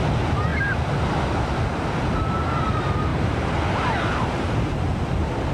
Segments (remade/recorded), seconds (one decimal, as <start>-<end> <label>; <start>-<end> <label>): 0.0-5.5 recorded